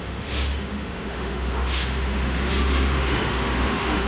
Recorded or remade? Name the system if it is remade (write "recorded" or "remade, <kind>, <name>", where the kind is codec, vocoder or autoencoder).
remade, autoencoder, DAC-VAE